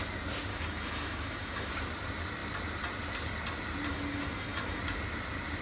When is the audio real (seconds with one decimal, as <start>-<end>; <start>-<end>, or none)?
0.0-0.5; 1.7-3.9; 4.8-5.6